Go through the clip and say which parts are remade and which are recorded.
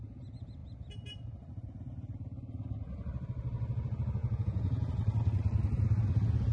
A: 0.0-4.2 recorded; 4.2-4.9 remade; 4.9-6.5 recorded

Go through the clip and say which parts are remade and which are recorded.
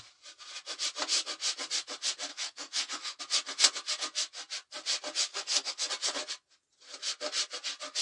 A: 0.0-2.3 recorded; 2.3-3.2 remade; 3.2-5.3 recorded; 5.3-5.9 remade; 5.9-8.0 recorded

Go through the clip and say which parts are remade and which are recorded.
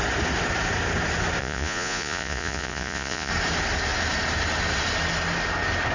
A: 0.0-1.4 recorded; 1.4-3.3 remade; 3.3-5.9 recorded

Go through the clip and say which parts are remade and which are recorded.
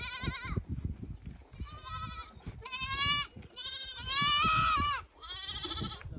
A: 0.0-6.2 recorded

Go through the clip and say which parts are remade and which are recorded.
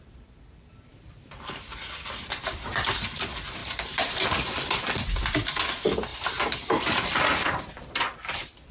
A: 0.0-3.6 recorded; 3.6-5.2 remade; 5.2-6.1 recorded; 6.1-8.7 remade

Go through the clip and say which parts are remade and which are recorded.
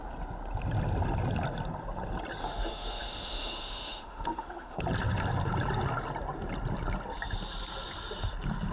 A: 0.0-2.4 recorded; 2.4-4.8 remade; 4.8-8.7 recorded